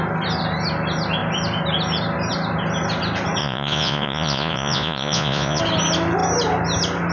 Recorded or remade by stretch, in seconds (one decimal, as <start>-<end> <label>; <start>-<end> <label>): 0.0-3.4 recorded; 3.4-5.6 remade; 5.6-7.1 recorded